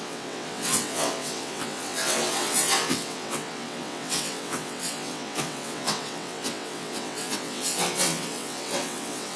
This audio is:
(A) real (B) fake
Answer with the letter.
B